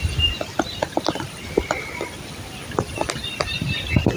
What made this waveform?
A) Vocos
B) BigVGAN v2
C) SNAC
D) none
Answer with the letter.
B